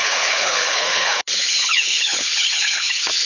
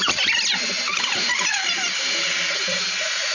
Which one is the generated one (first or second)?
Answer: first